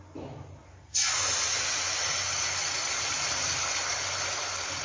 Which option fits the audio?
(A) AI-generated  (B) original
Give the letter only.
B